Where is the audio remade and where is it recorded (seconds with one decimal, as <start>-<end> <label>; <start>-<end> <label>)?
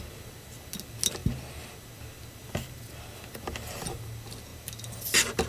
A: 0.0-5.5 recorded